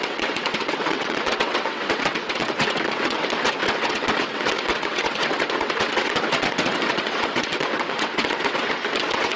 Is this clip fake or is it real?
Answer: fake